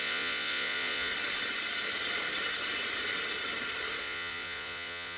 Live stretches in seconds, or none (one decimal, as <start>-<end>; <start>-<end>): 1.1-4.0